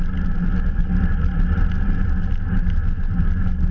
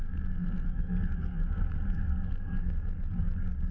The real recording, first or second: first